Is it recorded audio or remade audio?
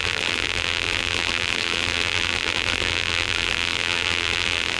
remade